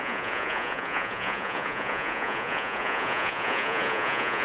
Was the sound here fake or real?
fake